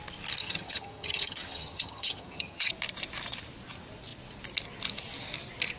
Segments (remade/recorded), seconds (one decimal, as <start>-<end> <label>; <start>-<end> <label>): 0.0-0.4 recorded; 0.4-2.7 remade; 2.7-5.8 recorded